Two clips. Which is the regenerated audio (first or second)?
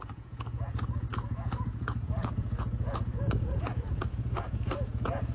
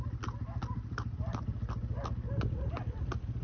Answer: first